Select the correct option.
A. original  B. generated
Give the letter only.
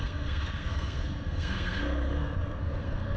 B